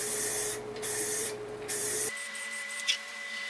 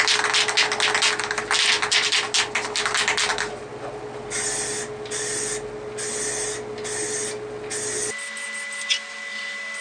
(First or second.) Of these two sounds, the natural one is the second